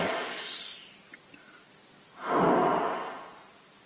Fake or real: real